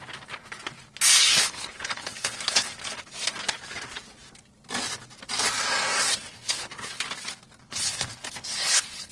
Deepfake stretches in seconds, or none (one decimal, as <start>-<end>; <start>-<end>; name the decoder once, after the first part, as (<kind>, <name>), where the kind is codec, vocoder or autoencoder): 1.2-3.0 (codec, HILCodec); 6.3-7.0; 7.6-9.1